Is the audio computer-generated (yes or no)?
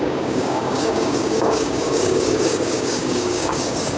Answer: yes